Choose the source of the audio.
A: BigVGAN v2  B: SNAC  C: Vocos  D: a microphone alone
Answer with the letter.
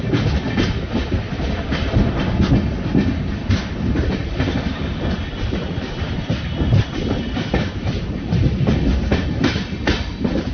A